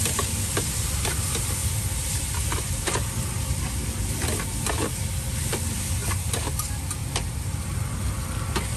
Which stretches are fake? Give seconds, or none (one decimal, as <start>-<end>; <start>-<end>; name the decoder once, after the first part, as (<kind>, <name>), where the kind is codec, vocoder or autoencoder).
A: none